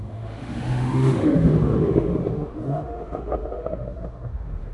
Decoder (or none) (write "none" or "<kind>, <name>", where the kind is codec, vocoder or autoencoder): autoencoder, DAC-VAE